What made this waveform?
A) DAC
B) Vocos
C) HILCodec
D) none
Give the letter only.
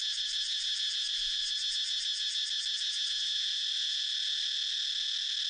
D